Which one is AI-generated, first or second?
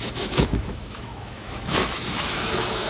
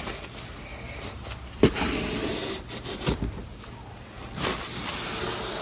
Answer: first